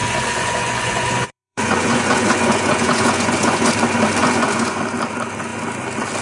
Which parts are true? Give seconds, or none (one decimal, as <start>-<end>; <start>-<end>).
3.7-4.2; 4.8-6.2